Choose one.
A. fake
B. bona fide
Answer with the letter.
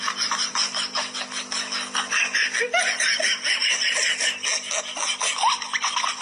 B